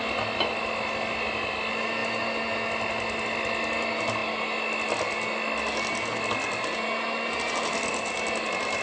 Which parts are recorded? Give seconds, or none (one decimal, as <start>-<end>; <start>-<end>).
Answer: 0.0-8.8